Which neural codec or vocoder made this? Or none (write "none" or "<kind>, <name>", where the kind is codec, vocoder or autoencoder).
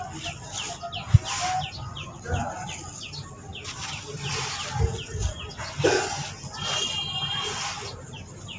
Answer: none